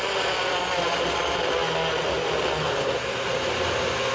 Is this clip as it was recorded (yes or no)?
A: yes